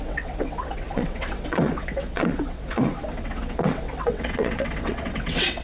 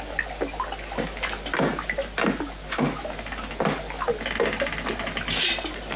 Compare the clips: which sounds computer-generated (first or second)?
first